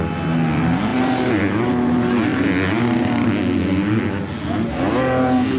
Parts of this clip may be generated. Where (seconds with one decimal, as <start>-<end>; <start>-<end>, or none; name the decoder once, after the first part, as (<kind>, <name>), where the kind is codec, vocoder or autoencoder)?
2.3-4.1 (vocoder, BigVGAN v2)